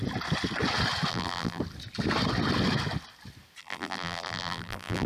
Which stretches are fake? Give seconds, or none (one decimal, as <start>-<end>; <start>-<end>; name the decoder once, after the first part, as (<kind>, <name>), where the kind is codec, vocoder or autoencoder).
1.1-1.6 (vocoder, BigVGAN v2); 3.6-5.1